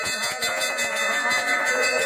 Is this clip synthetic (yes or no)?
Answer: yes